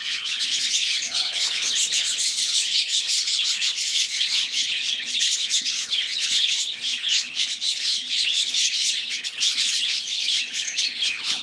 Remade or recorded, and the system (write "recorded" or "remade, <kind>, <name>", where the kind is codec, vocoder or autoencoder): remade, codec, HILCodec